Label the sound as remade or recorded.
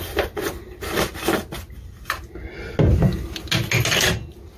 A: recorded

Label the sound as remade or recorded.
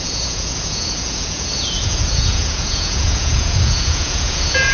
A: remade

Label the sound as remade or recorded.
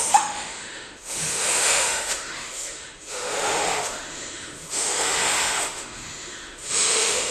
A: remade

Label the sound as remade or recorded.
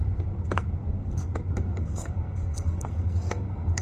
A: remade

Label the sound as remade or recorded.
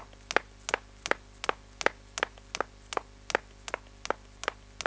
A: recorded